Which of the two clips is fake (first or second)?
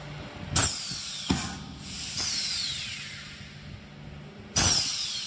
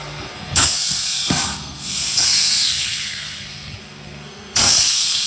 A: second